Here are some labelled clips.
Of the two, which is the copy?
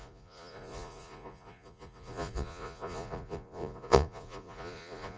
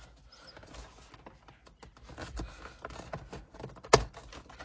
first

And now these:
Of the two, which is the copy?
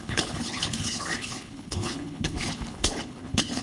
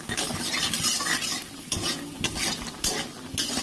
first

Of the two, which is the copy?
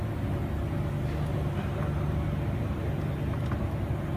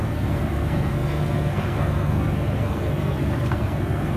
second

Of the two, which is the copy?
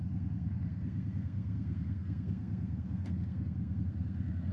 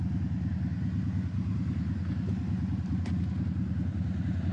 first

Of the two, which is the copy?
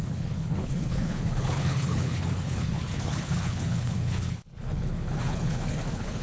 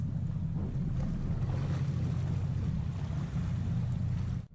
first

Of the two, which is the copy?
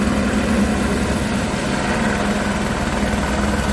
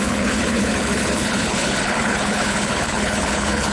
second